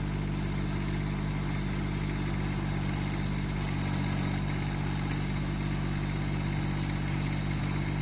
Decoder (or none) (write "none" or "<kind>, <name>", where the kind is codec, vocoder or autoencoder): none